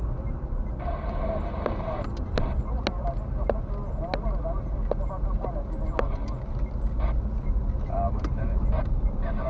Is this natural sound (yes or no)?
yes